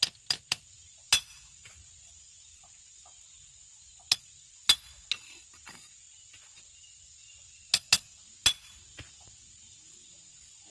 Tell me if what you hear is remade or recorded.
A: recorded